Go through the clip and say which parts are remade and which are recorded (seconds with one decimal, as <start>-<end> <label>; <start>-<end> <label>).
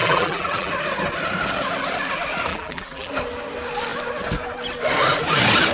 0.0-0.7 remade; 0.7-2.5 recorded; 2.5-3.1 remade; 3.1-5.7 recorded